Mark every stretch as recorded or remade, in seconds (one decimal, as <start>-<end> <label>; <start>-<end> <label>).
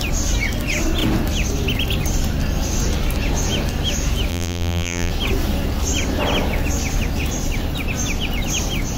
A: 0.0-4.3 recorded; 4.3-5.1 remade; 5.1-9.0 recorded